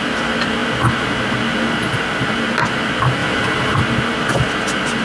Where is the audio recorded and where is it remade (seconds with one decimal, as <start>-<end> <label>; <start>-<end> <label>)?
0.0-5.0 recorded